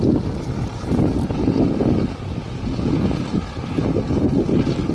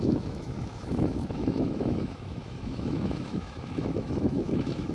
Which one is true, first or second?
first